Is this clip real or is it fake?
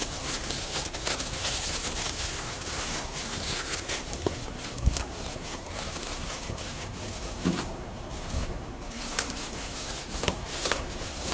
fake